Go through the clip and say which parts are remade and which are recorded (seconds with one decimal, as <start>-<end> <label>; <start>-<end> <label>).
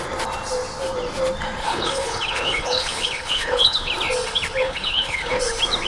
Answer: 0.0-1.6 recorded; 1.6-3.9 remade; 3.9-4.6 recorded; 4.6-5.4 remade; 5.4-5.9 recorded